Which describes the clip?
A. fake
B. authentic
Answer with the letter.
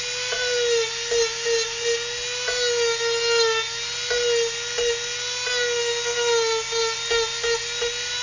B